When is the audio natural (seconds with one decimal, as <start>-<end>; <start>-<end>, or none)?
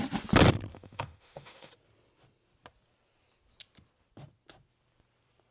0.0-0.7; 1.7-5.5